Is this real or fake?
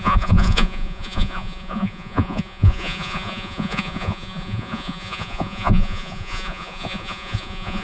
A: fake